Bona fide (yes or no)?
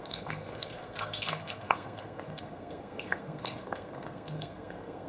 no